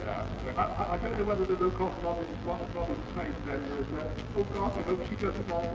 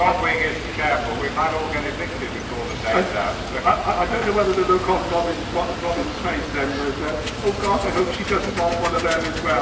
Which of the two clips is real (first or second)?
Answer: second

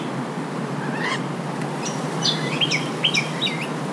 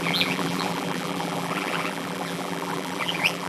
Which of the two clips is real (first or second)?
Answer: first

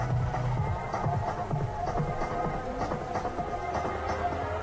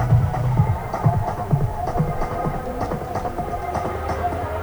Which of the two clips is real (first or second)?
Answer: first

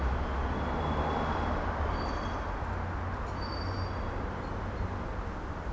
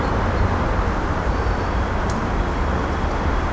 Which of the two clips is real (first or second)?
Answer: first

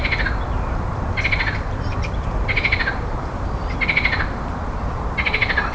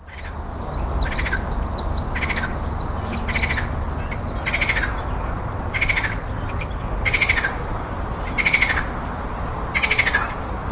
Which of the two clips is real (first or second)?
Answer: second